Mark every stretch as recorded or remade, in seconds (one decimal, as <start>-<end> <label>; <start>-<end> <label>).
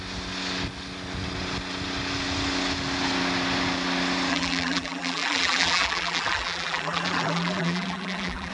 0.0-4.3 recorded; 4.3-8.5 remade